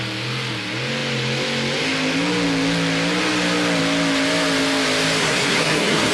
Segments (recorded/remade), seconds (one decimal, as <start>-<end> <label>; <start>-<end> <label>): 0.0-5.2 recorded; 5.2-6.1 remade